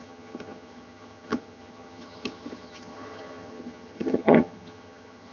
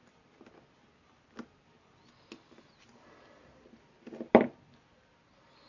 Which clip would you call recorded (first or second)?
second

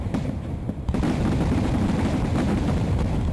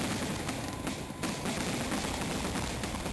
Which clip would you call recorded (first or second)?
second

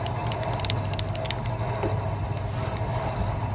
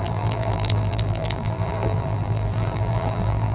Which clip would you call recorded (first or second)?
first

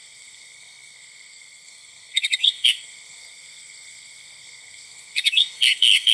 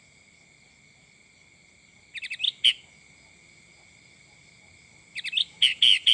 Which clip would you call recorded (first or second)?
second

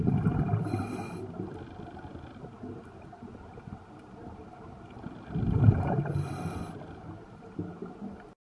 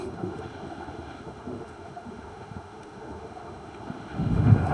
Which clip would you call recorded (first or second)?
first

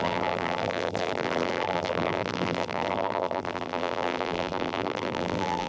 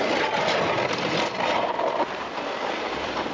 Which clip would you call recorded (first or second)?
second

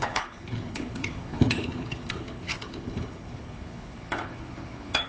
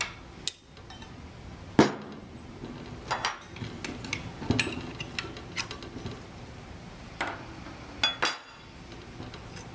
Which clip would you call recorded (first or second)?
second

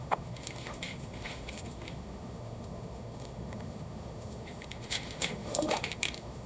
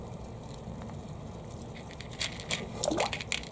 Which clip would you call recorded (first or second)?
second